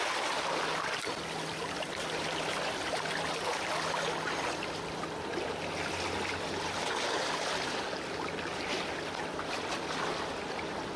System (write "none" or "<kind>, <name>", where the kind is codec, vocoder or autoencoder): none